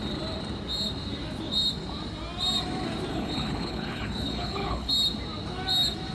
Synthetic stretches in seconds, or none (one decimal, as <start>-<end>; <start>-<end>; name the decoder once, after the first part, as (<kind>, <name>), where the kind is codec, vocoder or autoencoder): 3.1-4.9 (codec, HILCodec)

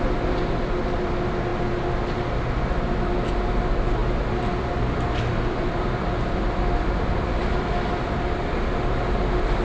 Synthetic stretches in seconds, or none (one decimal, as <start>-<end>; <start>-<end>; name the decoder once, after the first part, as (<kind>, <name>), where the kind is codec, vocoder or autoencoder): 4.0-8.0 (vocoder, BigVGAN v2)

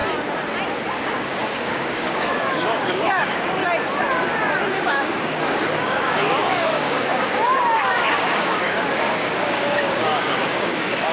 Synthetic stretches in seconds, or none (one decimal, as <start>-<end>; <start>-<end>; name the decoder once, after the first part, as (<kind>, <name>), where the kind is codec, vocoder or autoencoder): 0.9-3.6 (codec, DAC); 4.8-11.1

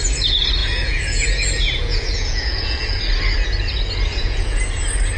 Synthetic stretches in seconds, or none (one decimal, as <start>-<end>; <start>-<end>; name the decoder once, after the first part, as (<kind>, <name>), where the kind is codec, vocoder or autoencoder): 0.6-3.0 (vocoder, Vocos); 4.1-4.6

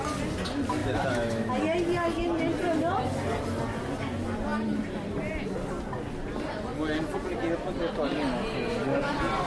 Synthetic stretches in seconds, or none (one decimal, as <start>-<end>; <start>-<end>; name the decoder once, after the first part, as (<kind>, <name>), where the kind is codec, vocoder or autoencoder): 0.8-1.5 (autoencoder, DAC-VAE)

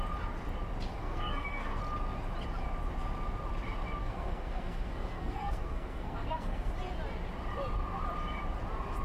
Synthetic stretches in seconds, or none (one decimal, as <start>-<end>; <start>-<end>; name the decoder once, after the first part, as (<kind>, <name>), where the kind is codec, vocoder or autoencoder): 0.9-1.8 (codec, SNAC); 4.0-6.7

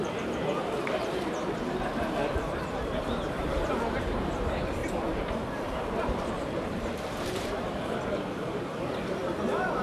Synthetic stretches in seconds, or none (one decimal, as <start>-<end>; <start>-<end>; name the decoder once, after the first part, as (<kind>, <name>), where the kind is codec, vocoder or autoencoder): 0.0-4.8 (vocoder, BigVGAN v2); 5.8-9.2